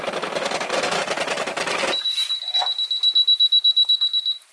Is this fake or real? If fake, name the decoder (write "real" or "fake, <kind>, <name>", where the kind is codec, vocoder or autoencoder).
real